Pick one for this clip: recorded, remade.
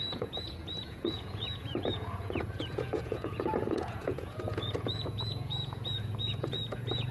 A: remade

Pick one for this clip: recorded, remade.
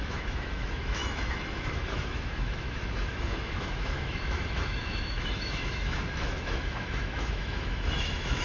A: remade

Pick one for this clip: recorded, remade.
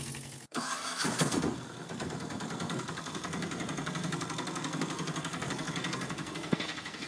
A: remade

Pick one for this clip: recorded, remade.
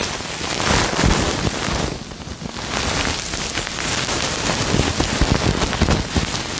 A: recorded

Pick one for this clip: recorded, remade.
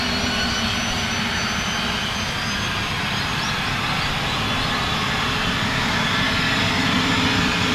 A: recorded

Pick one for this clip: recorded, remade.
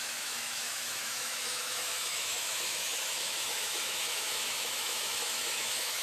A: remade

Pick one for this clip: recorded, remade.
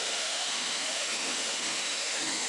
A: remade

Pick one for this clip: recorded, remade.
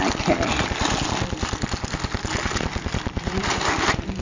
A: recorded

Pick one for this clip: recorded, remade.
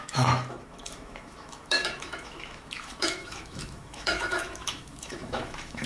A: remade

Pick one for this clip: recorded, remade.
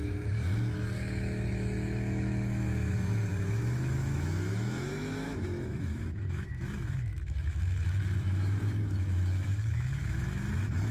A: remade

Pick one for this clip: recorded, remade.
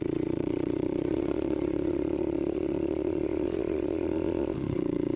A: remade